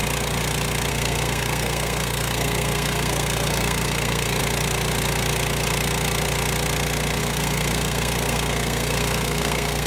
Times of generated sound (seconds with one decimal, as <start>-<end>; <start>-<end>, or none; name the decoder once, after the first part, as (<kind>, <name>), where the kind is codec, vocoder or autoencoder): 0.9-4.4 (codec, SNAC); 7.2-9.9